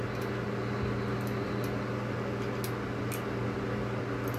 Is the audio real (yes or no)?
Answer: yes